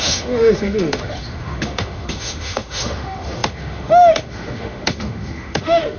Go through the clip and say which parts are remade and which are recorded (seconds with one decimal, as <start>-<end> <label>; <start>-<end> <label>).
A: 0.0-6.0 remade